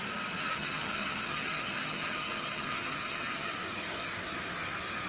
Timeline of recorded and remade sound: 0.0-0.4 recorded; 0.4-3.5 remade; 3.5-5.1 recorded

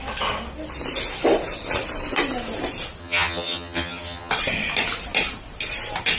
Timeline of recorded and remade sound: 0.0-3.0 recorded; 3.0-4.3 remade; 4.3-6.2 recorded

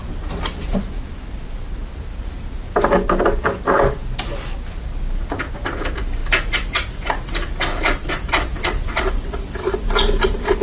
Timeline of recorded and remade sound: 0.0-10.6 recorded